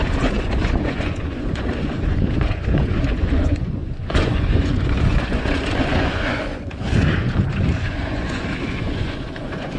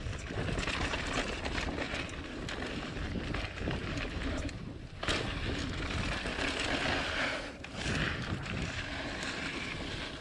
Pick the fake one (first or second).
first